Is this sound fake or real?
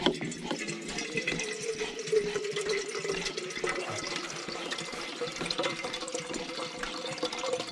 real